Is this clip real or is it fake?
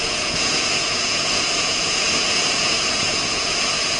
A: fake